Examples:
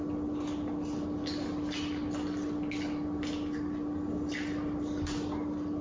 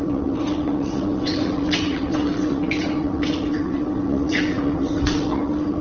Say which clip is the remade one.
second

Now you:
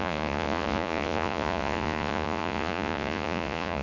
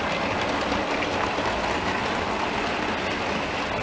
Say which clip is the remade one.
first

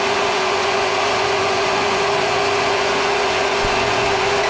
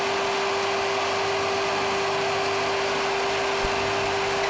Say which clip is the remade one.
first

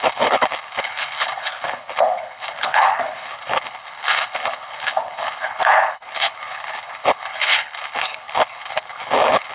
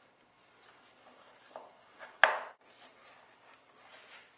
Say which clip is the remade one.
first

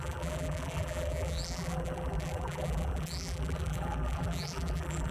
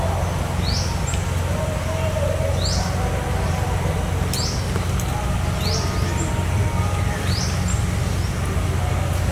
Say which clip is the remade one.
first